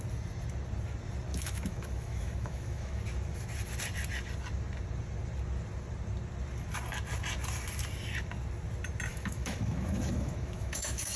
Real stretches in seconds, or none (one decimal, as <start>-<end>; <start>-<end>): 0.0-1.3; 3.0-9.1